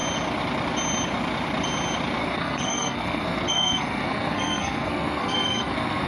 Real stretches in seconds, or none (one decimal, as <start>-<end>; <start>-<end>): 0.0-2.2